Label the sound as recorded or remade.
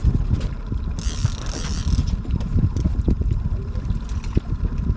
recorded